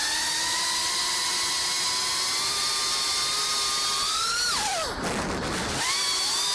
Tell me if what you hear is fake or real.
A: real